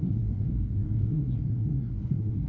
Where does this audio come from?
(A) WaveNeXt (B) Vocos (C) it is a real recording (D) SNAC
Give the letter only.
D